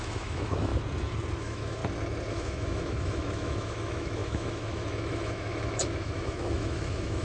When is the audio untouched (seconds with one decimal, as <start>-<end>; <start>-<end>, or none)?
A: 0.7-1.4; 1.8-2.3